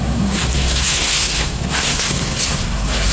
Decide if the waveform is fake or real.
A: fake